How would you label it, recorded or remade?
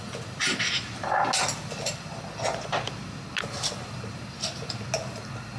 recorded